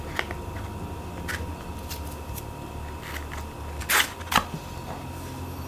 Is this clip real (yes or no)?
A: yes